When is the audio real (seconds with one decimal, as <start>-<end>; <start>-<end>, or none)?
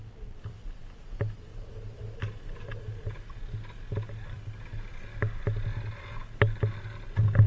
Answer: 0.0-7.5